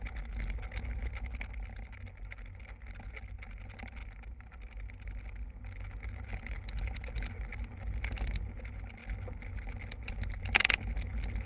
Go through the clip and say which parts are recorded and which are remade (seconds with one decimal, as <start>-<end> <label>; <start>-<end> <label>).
0.0-11.5 recorded